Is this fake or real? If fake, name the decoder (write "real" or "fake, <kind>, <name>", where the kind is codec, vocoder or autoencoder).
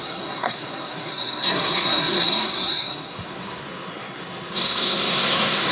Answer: fake, codec, SNAC